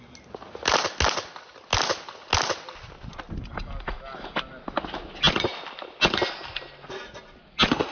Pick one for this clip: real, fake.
real